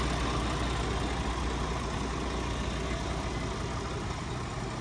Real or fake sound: real